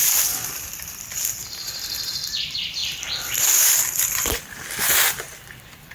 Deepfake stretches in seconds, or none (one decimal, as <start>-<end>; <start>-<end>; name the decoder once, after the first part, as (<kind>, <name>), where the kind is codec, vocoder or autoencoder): 0.6-1.4 (vocoder, BigVGAN v2); 2.1-5.9